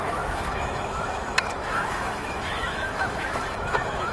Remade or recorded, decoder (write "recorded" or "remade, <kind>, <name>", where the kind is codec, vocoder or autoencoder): remade, autoencoder, DAC-VAE